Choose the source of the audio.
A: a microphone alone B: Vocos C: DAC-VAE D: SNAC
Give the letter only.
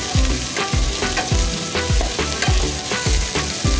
A